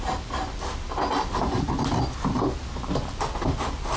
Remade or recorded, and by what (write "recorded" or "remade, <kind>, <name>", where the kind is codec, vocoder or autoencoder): recorded